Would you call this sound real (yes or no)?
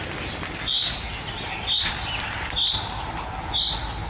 yes